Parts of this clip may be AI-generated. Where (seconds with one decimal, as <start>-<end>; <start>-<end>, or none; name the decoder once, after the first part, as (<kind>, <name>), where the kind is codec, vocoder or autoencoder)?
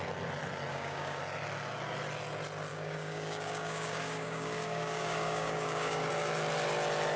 0.7-1.2 (codec, DAC); 2.7-6.1